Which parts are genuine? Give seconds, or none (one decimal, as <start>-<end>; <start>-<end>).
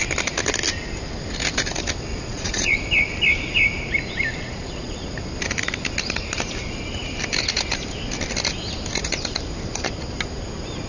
0.0-2.1; 2.8-4.3; 5.0-10.9